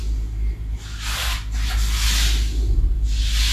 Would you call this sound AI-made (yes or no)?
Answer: no